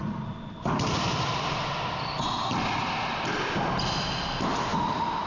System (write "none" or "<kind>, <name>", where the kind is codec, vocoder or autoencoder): none